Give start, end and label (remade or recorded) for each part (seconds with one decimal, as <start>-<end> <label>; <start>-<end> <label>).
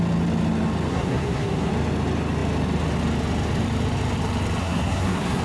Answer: 0.0-0.9 recorded; 0.9-1.7 remade; 1.7-4.6 recorded; 4.6-5.4 remade